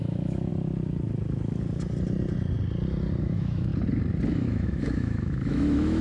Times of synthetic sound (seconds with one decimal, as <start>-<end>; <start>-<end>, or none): 0.0-0.5; 3.2-3.7; 4.3-6.0